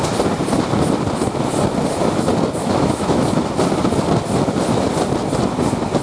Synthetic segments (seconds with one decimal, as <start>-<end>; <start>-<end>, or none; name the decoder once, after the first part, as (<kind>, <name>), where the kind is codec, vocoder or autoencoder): 2.6-3.2 (autoencoder, DAC-VAE)

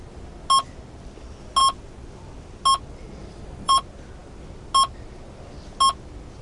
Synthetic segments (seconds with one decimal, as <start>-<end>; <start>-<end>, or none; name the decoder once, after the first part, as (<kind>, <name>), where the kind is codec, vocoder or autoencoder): 3.2-3.8 (vocoder, BigVGAN v2)

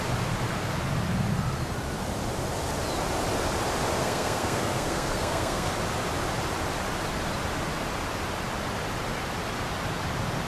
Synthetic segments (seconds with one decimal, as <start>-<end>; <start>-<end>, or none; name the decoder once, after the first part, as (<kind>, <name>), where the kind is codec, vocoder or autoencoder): 4.0-5.7 (codec, SNAC)

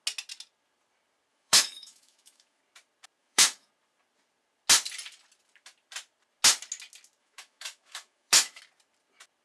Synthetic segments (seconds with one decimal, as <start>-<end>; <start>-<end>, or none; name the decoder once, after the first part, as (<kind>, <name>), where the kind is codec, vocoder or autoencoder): 1.3-2.6 (autoencoder, DAC-VAE); 3.2-3.7; 7.2-8.6

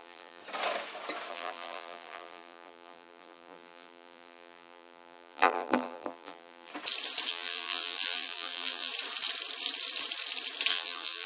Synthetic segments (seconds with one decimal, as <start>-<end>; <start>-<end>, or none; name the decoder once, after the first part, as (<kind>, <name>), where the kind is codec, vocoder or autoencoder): 0.0-0.4 (vocoder, BigVGAN v2); 1.3-6.7; 7.3-8.9; 10.7-11.3

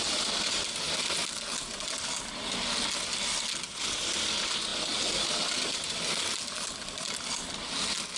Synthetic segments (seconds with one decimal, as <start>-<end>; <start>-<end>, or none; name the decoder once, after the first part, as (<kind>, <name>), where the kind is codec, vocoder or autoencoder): none

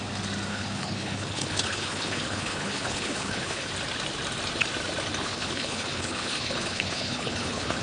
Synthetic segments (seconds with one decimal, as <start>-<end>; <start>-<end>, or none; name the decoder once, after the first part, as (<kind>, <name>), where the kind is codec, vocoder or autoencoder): 0.5-3.7 (codec, HILCodec); 5.2-7.8

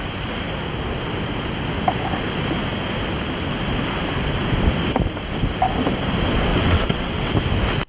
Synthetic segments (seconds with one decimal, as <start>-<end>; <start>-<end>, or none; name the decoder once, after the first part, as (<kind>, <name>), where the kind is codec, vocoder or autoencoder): 6.5-7.3 (vocoder, WaveNeXt)